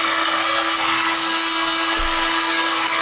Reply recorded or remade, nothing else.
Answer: remade